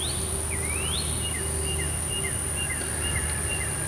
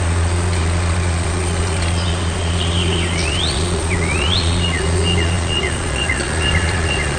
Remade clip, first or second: second